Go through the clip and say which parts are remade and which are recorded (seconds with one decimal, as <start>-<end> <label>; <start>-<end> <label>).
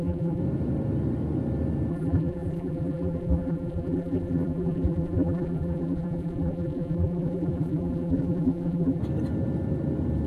0.0-0.4 remade; 0.4-1.9 recorded; 1.9-9.0 remade; 9.0-10.3 recorded